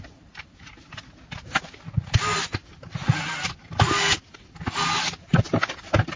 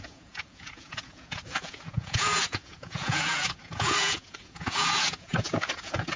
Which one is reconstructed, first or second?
second